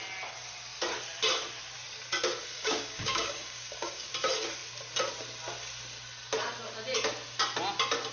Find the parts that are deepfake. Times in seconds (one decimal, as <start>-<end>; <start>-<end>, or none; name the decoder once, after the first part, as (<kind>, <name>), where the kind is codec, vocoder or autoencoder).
2.4-4.1 (codec, DAC)